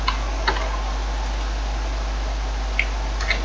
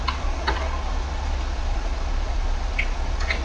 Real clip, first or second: first